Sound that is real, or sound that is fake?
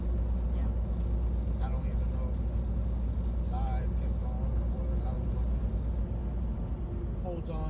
real